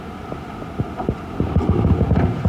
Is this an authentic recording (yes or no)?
yes